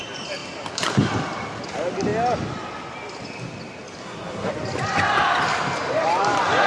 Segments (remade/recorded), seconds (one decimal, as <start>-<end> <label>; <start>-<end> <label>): 0.0-4.0 recorded; 4.0-4.5 remade; 4.5-6.7 recorded